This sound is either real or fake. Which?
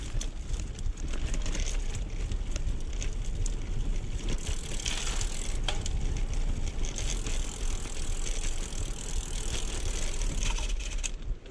real